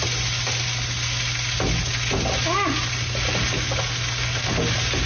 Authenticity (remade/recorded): recorded